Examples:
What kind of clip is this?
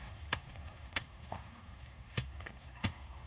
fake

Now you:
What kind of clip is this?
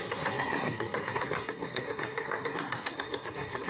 fake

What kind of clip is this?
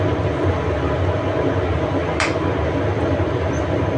real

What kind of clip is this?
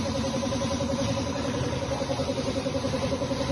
fake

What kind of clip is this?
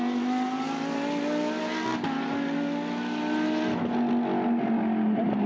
real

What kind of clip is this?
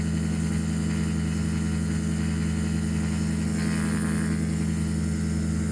real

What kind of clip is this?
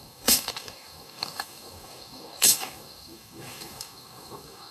fake